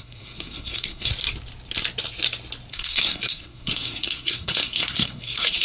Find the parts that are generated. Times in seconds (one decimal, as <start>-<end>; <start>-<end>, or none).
0.0-1.1; 2.7-5.6